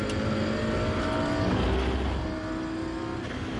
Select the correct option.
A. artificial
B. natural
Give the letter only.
B